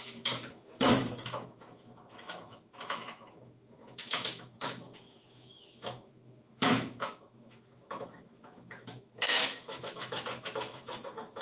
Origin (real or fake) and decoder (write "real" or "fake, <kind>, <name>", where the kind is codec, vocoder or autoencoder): fake, autoencoder, DAC-VAE